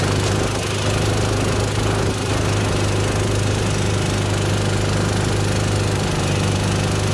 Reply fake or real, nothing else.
real